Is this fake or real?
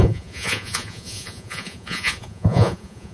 fake